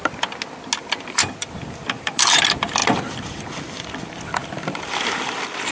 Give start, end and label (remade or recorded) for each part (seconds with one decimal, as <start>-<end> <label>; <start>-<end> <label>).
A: 0.0-0.8 recorded; 0.8-5.7 remade